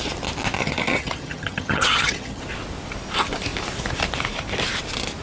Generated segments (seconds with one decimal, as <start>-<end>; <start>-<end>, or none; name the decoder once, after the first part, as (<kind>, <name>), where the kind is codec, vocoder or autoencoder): 0.6-2.4 (vocoder, HiFi-GAN)